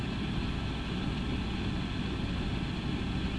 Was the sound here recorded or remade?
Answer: recorded